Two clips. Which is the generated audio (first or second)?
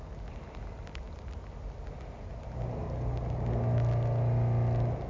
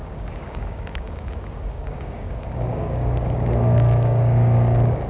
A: second